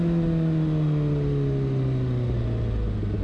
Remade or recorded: recorded